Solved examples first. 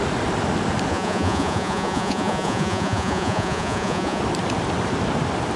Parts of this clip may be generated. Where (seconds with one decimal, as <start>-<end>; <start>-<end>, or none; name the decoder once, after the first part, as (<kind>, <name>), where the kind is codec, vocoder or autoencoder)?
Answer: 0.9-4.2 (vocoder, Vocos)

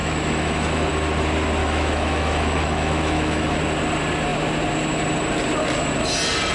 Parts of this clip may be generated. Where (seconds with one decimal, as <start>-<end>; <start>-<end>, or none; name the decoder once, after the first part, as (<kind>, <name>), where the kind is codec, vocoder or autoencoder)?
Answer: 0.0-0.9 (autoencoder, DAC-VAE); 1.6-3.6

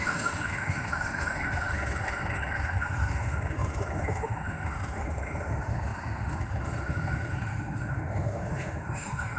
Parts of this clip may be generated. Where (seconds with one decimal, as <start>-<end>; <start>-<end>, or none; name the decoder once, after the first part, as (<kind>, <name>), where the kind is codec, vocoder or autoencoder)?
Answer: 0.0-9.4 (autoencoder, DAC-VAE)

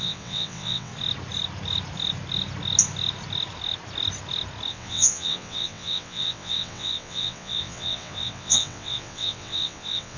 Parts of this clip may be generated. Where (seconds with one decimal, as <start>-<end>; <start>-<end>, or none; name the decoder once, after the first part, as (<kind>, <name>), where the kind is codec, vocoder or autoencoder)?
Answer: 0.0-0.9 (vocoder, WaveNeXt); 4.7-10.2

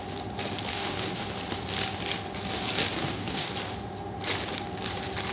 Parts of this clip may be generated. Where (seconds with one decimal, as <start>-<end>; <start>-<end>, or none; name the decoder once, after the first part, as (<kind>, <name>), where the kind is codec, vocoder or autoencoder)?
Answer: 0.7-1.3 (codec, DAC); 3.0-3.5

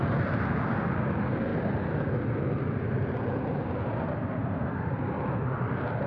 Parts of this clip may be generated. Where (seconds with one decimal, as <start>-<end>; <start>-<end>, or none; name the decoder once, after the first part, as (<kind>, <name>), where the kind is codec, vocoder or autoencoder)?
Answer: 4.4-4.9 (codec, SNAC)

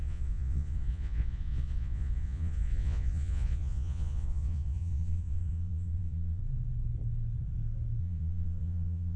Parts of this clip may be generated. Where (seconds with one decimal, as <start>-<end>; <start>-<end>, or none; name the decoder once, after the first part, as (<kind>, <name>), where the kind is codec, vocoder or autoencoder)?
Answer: 0.0-6.4 (vocoder, Vocos); 8.0-9.2